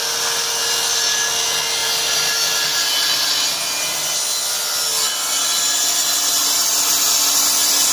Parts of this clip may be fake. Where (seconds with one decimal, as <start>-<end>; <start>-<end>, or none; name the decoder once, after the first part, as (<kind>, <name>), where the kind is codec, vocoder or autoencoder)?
none

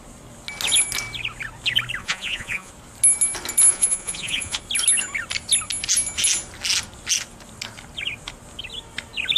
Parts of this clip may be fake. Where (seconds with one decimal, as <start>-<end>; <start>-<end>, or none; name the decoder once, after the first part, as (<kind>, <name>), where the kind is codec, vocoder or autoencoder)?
2.0-2.7 (vocoder, Vocos); 3.7-4.6

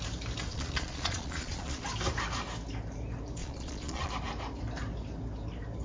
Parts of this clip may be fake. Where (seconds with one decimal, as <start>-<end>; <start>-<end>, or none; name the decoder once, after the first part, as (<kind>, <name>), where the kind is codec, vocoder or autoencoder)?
0.5-1.8 (vocoder, Vocos); 3.4-4.1

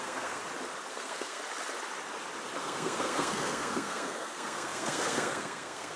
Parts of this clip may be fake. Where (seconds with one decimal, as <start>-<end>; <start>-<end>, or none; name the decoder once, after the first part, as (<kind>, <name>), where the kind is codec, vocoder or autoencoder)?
0.0-0.4 (codec, SNAC); 0.9-1.4; 2.6-6.0

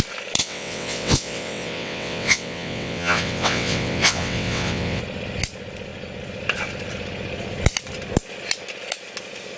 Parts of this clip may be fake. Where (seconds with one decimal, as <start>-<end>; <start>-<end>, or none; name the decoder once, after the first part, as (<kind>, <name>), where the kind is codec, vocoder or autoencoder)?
0.4-5.0 (vocoder, WaveNeXt)

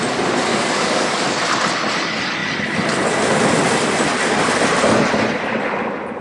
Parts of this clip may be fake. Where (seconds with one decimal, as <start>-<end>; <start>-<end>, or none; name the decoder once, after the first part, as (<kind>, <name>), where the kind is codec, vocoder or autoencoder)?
0.5-1.4 (codec, DAC)

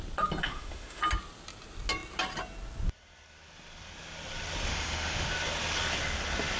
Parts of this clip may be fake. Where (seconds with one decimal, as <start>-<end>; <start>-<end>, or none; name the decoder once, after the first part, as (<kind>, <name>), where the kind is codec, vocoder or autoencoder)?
0.4-1.0 (autoencoder, DAC-VAE); 4.7-5.3

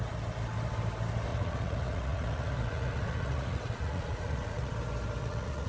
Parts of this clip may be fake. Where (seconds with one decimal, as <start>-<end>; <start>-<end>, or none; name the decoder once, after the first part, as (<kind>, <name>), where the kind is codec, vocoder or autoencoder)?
1.3-4.7 (vocoder, Vocos); 5.2-5.7